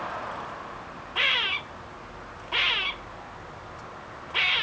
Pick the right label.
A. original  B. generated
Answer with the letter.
A